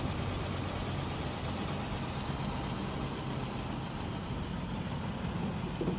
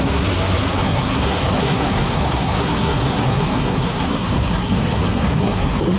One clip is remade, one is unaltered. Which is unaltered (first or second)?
first